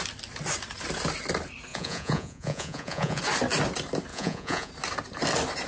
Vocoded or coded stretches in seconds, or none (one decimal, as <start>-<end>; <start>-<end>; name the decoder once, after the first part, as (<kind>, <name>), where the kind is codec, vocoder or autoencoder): 1.7-3.2 (vocoder, Vocos); 4.1-4.7